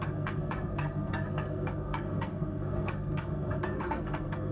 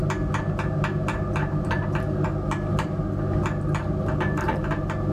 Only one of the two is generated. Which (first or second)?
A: first